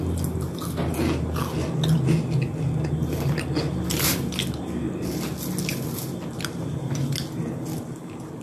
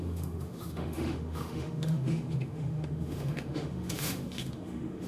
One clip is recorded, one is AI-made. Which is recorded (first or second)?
first